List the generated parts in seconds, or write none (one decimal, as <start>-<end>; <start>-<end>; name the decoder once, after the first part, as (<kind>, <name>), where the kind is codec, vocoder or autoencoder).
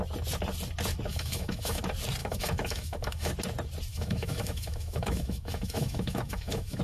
1.1-1.8 (autoencoder, DAC-VAE); 2.2-3.3; 3.9-6.8